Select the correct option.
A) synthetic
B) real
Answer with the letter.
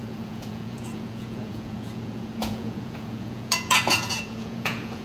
A